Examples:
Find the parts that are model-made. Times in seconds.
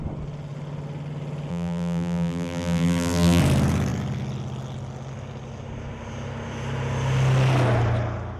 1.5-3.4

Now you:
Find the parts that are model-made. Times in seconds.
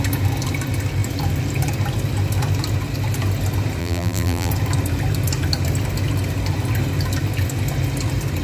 3.8-4.5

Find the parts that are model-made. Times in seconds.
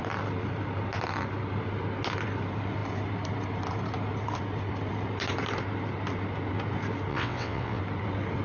7.1-7.8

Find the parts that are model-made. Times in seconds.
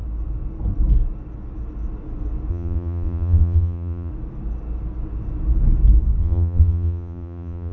2.5-4.1; 6.2-7.7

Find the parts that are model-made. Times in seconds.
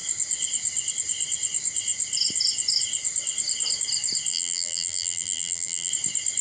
4.3-5.9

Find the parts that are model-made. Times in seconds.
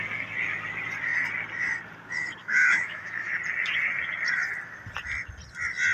2.4-3.3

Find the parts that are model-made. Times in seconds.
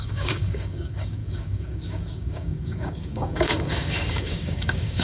0.0-5.0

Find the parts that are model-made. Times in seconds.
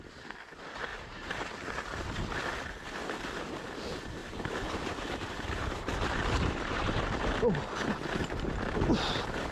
0.9-1.4; 4.2-7.4